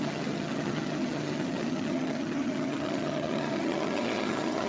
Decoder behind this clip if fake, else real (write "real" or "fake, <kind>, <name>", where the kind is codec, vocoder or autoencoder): fake, vocoder, HiFi-GAN